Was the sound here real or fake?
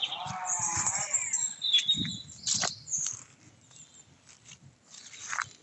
real